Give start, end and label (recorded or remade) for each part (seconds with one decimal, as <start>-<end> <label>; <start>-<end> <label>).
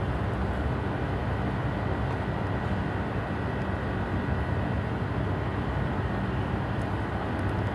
0.0-7.7 recorded